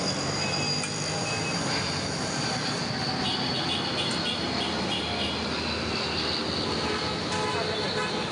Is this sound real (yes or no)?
yes